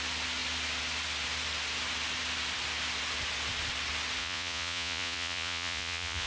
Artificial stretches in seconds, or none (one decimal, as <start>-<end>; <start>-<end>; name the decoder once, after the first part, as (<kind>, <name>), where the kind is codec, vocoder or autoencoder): 4.2-6.3 (vocoder, Vocos)